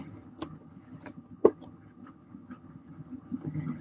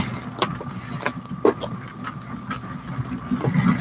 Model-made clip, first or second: first